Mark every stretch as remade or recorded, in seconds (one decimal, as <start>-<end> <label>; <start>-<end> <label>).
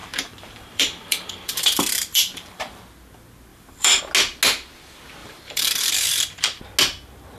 0.0-2.8 remade; 2.8-3.5 recorded; 3.5-4.0 remade; 4.0-5.2 recorded; 5.2-6.6 remade; 6.6-7.4 recorded